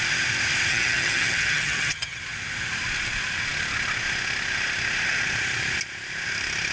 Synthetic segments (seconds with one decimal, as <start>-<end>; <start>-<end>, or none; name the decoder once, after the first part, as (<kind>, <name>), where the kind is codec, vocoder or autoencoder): 0.7-2.2 (vocoder, HiFi-GAN)